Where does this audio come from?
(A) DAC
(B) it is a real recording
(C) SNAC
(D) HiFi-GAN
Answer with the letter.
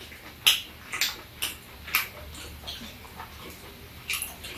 B